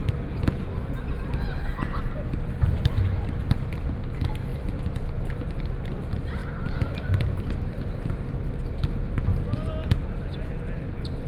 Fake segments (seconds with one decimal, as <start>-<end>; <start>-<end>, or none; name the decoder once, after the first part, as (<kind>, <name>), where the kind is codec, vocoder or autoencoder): none